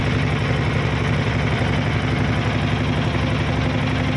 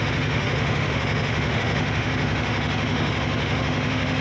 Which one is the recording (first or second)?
first